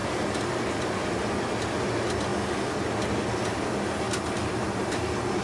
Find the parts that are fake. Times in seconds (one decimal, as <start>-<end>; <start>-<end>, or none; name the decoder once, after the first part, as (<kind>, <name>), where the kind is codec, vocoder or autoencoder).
0.0-1.1 (vocoder, BigVGAN v2); 4.4-5.4

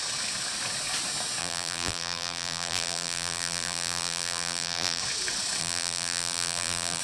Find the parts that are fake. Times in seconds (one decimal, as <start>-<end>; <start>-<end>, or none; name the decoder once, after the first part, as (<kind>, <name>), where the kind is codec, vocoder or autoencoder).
1.4-5.0 (vocoder, BigVGAN v2); 5.6-7.0